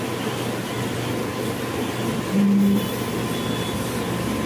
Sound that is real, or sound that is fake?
real